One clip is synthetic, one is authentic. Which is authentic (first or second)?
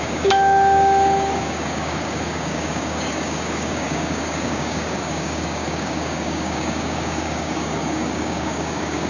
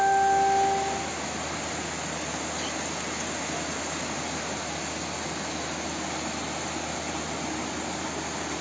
second